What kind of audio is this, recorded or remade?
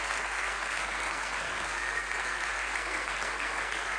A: remade